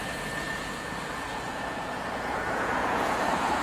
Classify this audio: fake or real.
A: fake